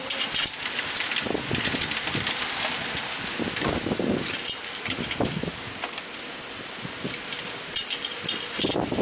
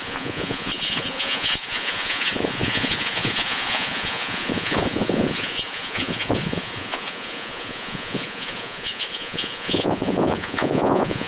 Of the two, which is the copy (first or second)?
second